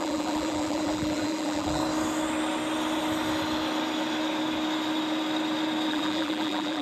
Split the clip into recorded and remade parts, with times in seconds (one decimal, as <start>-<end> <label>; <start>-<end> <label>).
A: 0.0-1.8 remade; 1.8-5.9 recorded; 5.9-6.8 remade